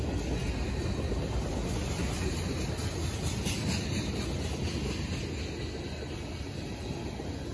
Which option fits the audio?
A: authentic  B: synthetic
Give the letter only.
A